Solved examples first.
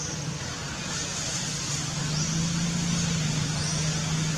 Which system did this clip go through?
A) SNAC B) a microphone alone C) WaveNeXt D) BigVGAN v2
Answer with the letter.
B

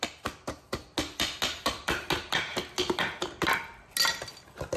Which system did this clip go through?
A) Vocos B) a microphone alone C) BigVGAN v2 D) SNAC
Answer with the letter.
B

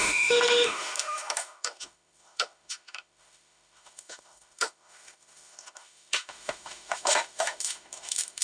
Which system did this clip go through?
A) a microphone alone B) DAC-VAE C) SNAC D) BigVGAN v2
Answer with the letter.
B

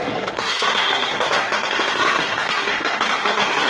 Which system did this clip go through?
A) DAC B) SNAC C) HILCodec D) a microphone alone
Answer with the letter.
B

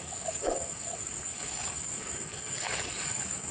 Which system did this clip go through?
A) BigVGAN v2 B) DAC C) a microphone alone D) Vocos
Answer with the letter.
B